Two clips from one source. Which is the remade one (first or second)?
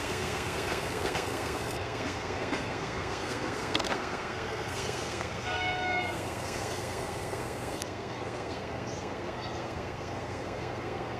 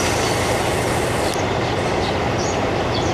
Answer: first